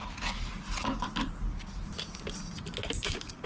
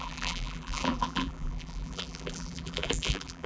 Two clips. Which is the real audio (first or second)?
first